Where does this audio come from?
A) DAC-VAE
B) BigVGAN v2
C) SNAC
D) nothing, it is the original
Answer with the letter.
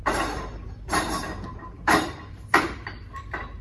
B